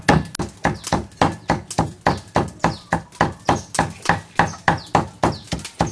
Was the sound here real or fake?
real